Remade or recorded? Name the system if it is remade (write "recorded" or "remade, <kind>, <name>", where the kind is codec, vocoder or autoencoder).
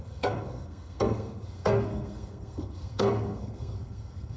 remade, codec, SNAC